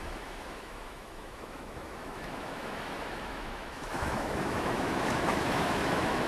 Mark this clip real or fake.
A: fake